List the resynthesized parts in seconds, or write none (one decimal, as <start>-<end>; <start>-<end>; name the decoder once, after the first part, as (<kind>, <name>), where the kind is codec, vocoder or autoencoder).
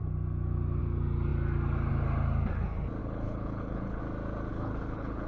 3.0-4.0 (codec, HILCodec); 4.5-5.3